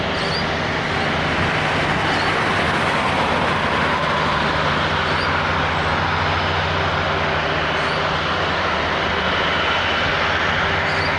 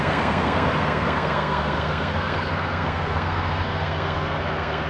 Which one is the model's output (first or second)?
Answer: second